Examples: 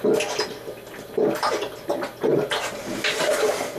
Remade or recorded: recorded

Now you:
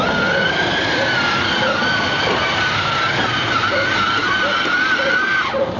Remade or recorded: recorded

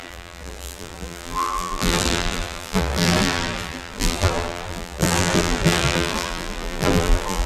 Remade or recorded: remade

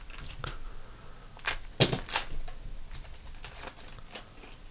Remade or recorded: recorded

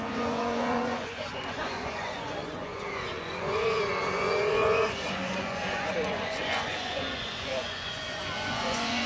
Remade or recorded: remade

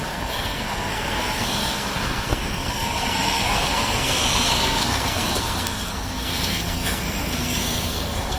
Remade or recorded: remade